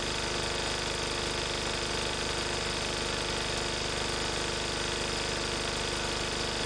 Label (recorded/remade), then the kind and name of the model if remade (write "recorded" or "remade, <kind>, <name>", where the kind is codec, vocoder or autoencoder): recorded